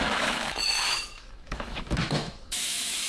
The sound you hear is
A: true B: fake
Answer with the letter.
B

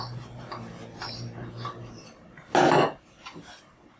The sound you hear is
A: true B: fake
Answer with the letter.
A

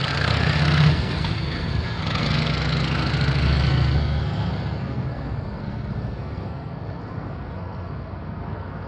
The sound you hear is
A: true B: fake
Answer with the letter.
B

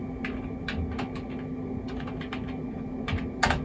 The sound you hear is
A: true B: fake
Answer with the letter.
A